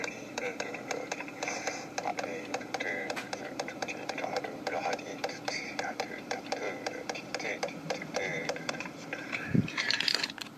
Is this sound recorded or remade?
remade